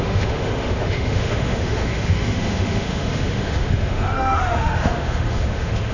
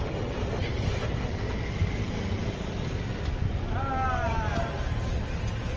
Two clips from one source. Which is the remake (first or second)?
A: first